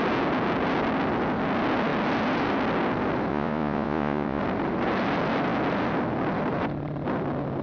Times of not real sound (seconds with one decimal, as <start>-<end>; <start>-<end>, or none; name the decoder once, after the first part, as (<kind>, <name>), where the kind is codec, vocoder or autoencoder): 3.3-4.4 (vocoder, Vocos)